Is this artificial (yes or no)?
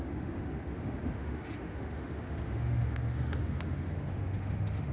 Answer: yes